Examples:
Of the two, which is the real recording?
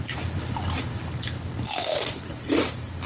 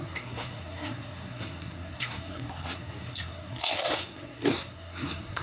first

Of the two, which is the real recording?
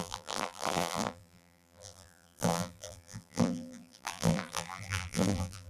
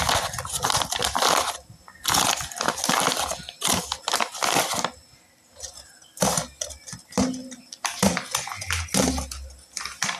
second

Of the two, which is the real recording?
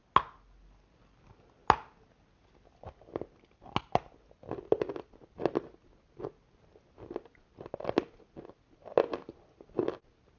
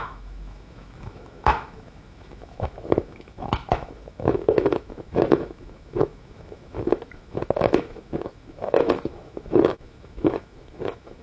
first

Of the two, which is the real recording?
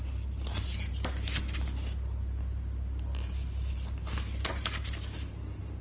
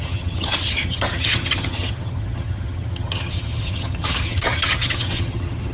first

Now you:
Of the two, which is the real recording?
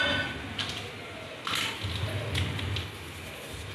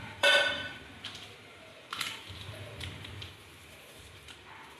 first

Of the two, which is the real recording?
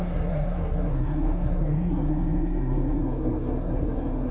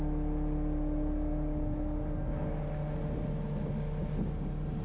second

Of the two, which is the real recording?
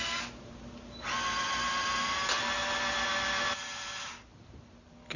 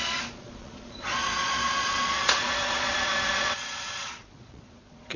first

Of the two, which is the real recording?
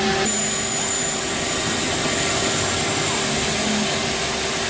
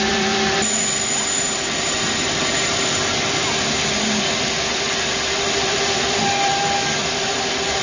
first